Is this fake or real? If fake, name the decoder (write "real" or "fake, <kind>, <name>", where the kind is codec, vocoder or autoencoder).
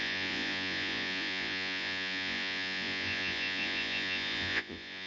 fake, vocoder, Vocos